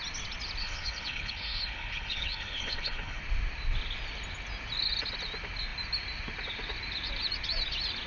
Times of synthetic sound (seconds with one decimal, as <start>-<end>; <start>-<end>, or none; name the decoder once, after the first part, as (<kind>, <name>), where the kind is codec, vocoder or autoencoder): 0.6-3.2 (codec, HILCodec)